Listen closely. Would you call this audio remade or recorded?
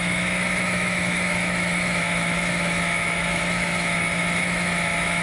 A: remade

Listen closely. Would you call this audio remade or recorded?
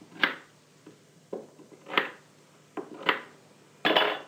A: recorded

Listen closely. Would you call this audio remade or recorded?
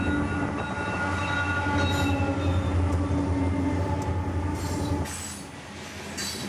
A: recorded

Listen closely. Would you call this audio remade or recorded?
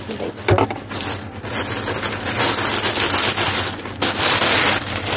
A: recorded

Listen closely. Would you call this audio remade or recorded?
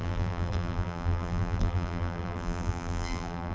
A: remade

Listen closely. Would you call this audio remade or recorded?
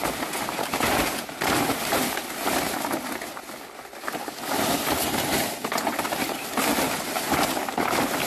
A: recorded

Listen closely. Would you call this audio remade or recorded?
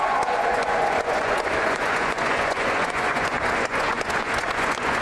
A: remade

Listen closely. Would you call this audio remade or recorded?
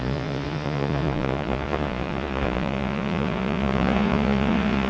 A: remade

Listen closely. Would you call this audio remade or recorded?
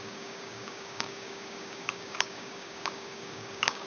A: remade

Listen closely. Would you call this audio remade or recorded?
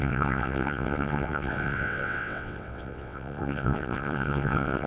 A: remade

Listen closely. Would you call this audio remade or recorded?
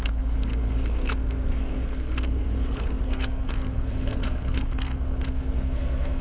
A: remade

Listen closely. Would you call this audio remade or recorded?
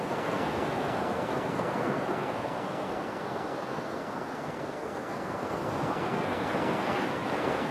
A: remade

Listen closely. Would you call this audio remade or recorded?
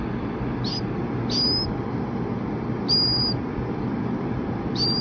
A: recorded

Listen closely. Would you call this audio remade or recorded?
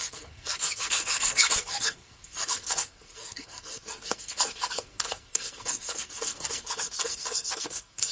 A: remade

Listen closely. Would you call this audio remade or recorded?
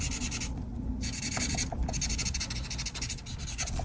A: recorded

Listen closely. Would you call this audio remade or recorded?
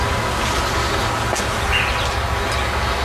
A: recorded